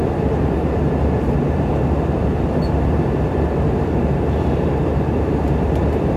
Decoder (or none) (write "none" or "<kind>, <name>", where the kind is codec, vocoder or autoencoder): vocoder, BigVGAN v2